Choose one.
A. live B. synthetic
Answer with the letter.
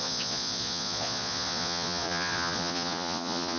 B